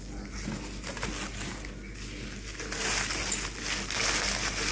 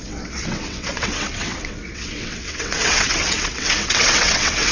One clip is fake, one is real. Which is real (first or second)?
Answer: first